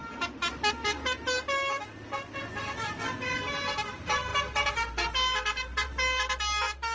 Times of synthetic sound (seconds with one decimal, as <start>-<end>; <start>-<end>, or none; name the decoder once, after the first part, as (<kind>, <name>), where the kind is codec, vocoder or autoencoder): none